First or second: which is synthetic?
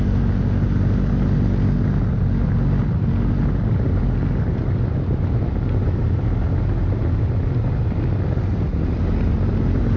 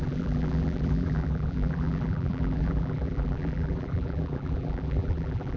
second